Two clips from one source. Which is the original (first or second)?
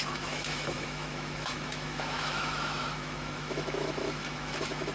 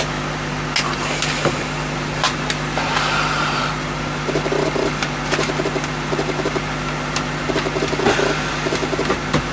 second